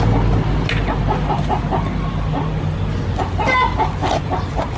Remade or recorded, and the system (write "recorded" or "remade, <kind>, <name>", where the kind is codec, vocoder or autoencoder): recorded